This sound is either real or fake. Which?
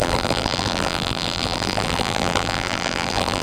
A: fake